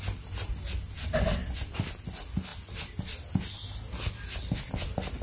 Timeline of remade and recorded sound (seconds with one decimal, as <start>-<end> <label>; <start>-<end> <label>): 0.0-5.2 recorded